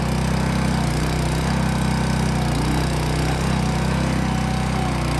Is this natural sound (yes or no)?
yes